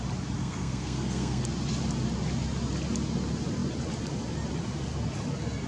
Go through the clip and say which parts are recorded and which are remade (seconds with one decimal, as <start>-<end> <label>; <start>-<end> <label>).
0.0-0.4 recorded; 0.4-1.4 remade; 1.4-5.7 recorded